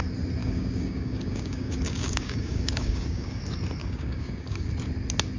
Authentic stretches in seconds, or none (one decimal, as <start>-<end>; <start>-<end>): 0.0-0.4; 3.4-3.8; 4.7-5.4